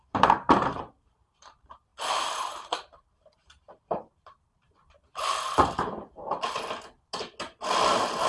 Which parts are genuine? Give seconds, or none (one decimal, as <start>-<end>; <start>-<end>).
4.8-8.3